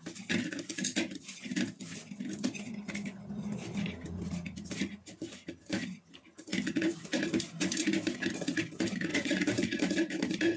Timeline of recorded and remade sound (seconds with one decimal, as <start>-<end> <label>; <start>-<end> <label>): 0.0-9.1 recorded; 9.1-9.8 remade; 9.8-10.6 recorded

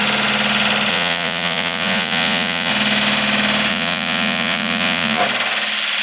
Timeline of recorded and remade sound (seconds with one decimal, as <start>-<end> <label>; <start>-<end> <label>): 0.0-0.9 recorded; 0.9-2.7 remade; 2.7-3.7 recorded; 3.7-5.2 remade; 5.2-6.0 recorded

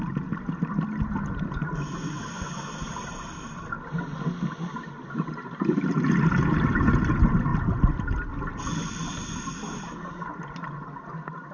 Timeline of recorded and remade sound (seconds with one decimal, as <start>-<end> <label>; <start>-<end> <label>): 0.0-11.5 recorded